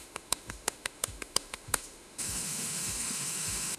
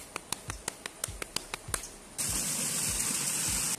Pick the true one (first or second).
second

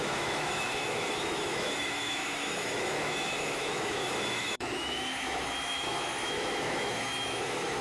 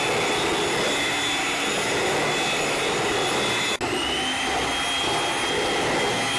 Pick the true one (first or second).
second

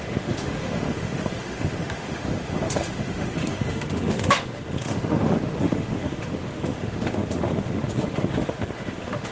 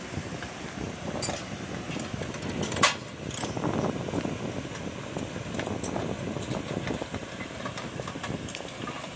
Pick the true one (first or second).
second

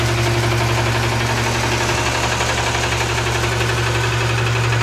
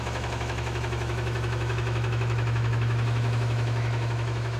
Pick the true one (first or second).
first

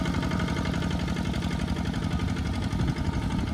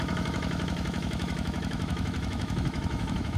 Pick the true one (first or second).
first